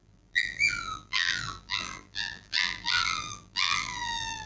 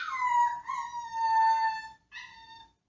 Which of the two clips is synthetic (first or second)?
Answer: first